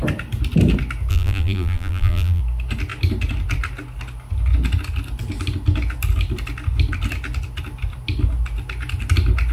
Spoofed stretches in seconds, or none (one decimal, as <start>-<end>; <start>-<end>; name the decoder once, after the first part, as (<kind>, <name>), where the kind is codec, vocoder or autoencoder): 1.1-2.4 (vocoder, BigVGAN v2)